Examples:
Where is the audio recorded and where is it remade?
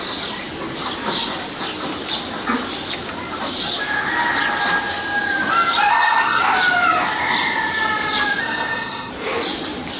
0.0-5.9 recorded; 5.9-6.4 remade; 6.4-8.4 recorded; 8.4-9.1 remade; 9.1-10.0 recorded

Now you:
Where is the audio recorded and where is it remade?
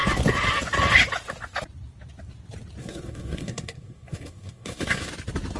0.0-2.8 recorded; 2.8-5.1 remade; 5.1-5.6 recorded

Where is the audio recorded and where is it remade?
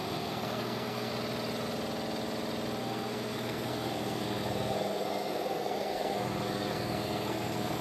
0.0-1.1 remade; 1.1-2.8 recorded; 2.8-7.8 remade